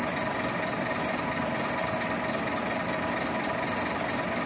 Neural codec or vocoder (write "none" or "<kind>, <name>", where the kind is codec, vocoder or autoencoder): none